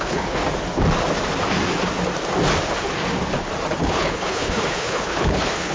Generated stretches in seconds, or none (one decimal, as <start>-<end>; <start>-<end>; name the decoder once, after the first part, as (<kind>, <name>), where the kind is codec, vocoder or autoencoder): 0.0-0.4 (codec, HILCodec); 3.8-5.7